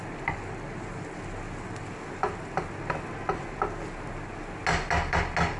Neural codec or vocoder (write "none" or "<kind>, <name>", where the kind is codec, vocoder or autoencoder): none